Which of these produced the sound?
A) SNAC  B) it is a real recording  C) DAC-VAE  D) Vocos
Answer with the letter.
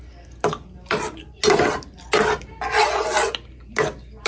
B